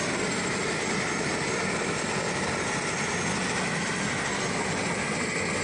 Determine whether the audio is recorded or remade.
recorded